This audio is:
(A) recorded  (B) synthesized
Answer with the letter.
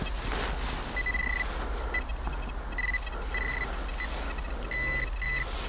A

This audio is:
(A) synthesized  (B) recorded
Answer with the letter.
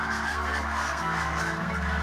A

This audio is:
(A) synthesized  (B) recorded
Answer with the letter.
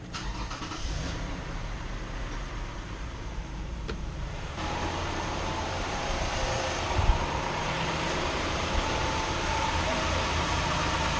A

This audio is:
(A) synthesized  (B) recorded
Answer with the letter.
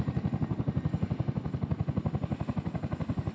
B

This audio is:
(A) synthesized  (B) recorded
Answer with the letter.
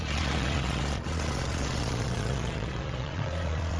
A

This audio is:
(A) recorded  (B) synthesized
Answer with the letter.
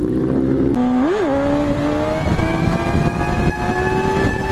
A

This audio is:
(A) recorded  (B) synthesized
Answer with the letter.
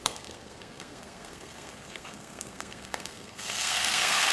B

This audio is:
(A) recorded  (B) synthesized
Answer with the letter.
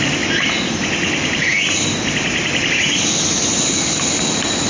A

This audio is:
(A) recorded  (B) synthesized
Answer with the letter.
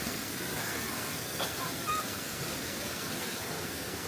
B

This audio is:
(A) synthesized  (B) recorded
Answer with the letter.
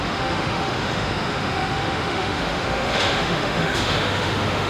A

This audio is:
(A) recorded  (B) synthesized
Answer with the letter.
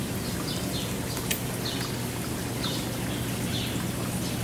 A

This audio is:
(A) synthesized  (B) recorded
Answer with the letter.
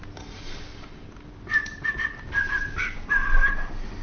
B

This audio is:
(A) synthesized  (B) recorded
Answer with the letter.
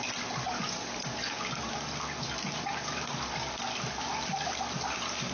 B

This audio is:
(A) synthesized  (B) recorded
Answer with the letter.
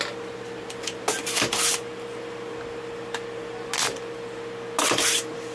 B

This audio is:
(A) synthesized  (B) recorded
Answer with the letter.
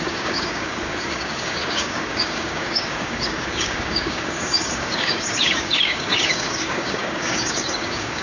A